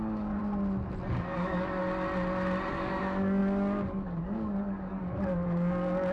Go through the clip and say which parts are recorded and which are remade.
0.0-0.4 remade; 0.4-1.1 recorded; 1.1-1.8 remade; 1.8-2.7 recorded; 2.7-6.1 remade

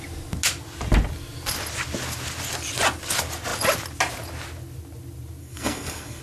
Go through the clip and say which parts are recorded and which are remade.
0.0-5.4 recorded; 5.4-6.2 remade

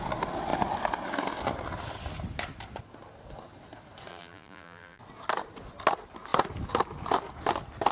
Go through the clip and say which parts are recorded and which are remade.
0.0-4.1 recorded; 4.1-5.0 remade; 5.0-7.9 recorded

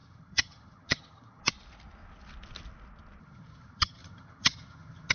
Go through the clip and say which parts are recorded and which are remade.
0.0-1.4 remade; 1.4-3.2 recorded; 3.2-5.1 remade

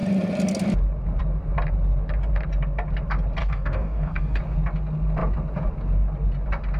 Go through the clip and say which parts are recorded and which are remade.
0.0-3.4 recorded; 3.4-4.4 remade; 4.4-6.8 recorded

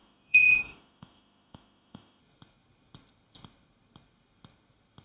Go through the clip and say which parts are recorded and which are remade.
0.0-2.2 remade; 2.2-5.0 recorded

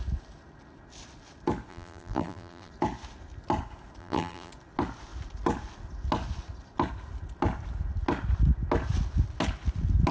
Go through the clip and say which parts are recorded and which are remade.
0.0-1.7 recorded; 1.7-2.7 remade; 2.7-4.0 recorded; 4.0-4.5 remade; 4.5-10.1 recorded

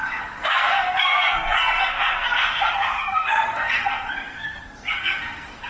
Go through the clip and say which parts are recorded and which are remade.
0.0-5.7 remade